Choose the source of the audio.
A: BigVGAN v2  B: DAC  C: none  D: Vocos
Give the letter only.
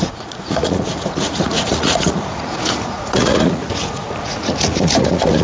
D